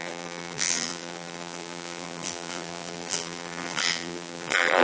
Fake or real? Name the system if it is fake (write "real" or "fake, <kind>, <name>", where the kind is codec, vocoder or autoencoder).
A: fake, vocoder, BigVGAN v2